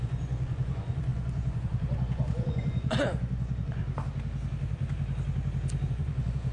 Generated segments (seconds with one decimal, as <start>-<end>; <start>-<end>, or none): 0.0-3.8; 5.9-6.5